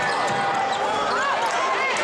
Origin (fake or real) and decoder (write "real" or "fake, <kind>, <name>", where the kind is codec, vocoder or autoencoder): real